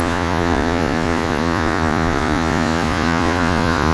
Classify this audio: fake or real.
fake